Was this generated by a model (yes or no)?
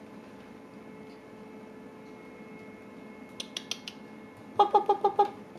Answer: no